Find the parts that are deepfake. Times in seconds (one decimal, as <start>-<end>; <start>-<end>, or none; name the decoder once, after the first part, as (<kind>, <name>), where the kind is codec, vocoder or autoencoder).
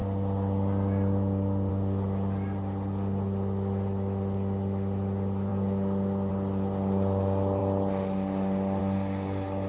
none